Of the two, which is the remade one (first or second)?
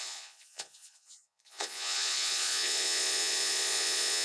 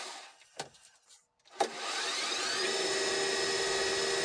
first